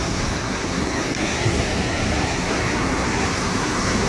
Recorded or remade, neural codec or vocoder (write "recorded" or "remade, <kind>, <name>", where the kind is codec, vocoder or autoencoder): remade, codec, SNAC